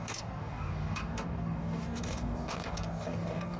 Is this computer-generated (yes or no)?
yes